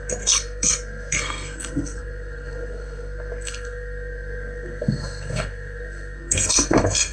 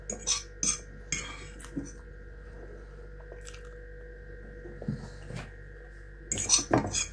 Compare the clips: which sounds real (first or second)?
second